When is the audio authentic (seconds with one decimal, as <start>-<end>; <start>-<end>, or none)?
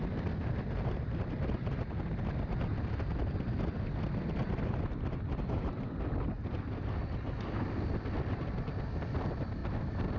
0.0-10.2